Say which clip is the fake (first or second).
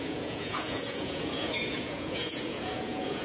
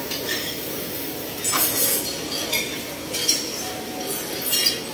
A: first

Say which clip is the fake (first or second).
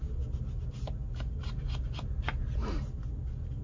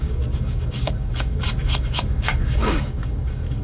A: second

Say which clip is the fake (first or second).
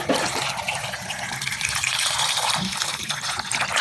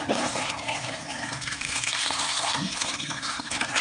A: second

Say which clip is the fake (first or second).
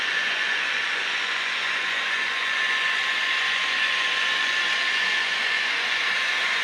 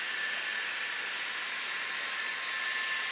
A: first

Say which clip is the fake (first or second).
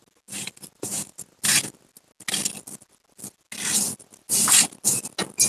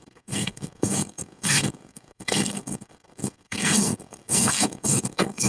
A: second